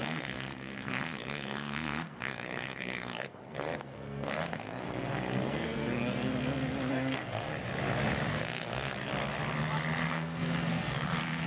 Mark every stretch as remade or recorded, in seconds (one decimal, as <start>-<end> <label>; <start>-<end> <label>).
0.0-6.3 remade; 6.3-6.9 recorded; 6.9-7.5 remade; 7.5-8.3 recorded; 8.3-9.1 remade; 9.1-10.1 recorded; 10.1-11.5 remade